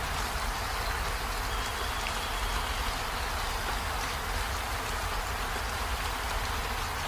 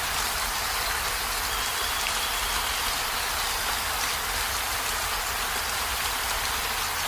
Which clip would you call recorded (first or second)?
first